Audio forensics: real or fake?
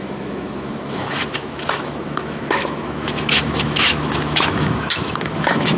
fake